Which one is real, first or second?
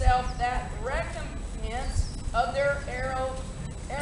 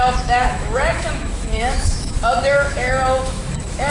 first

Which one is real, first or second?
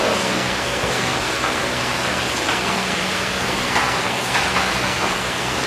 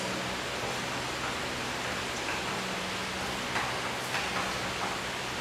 second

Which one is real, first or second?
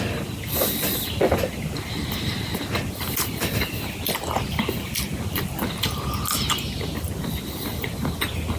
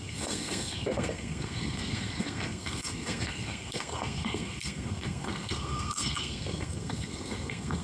first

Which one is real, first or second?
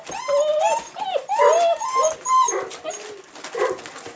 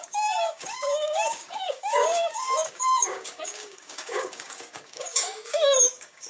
first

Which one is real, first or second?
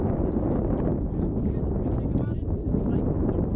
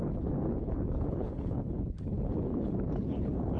first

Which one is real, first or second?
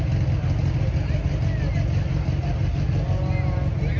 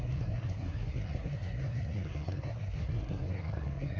first